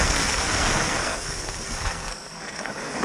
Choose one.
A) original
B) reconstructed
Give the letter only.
B